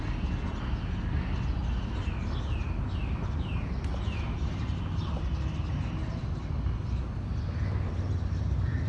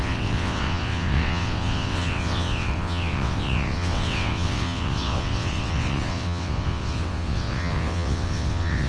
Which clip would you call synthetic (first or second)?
second